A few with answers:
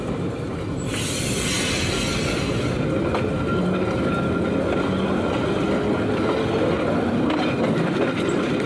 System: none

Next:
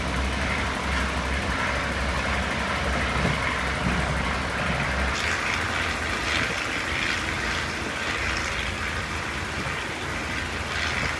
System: none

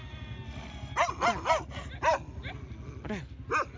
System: none